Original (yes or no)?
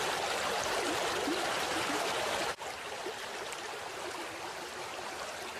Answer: yes